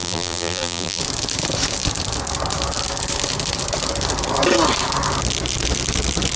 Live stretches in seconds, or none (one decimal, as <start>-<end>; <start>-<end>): 1.0-6.4